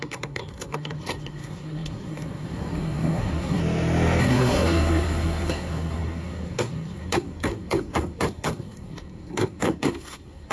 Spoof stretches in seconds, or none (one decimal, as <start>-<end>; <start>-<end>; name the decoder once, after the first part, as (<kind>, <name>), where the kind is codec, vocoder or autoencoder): 0.0-3.6 (codec, SNAC); 4.2-10.5